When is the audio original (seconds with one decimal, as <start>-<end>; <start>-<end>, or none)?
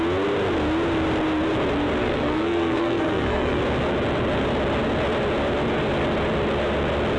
0.0-2.0; 3.6-7.2